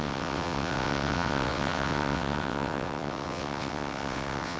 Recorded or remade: remade